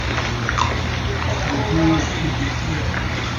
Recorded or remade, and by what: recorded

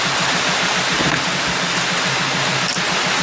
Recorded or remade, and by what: recorded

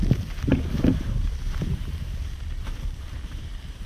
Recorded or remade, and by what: remade, vocoder, BigVGAN v2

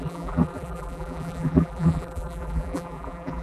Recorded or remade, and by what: remade, vocoder, BigVGAN v2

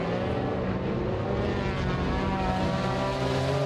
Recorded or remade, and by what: recorded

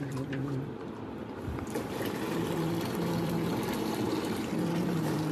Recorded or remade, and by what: remade, vocoder, BigVGAN v2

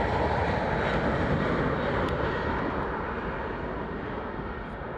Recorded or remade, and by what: recorded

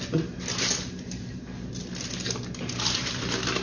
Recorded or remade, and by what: recorded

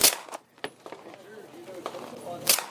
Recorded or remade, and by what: recorded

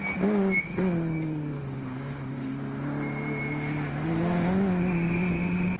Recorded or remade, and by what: recorded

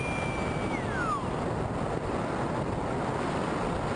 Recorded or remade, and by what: recorded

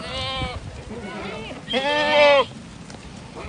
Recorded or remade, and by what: recorded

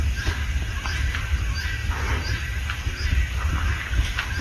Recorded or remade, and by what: recorded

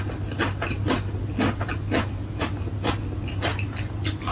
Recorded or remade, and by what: recorded